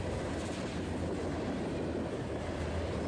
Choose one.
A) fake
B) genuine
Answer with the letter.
B